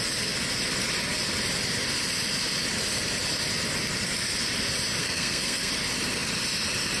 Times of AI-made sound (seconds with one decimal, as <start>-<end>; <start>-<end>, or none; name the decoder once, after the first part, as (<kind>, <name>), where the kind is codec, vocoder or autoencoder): 5.0-5.7 (codec, SNAC)